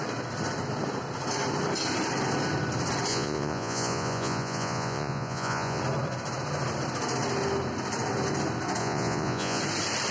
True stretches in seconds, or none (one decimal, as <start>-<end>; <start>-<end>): 0.0-3.1; 5.8-8.8; 9.6-10.1